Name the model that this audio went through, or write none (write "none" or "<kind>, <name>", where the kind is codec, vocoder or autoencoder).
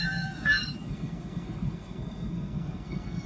codec, SNAC